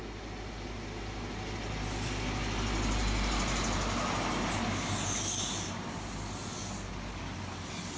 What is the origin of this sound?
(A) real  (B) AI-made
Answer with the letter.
A